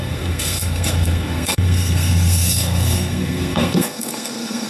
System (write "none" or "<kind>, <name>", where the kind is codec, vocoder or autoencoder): codec, SNAC